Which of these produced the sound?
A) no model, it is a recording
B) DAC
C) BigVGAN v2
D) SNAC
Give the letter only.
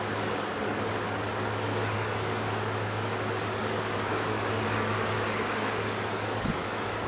B